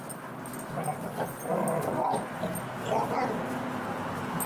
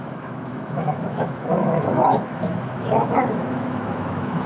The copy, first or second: second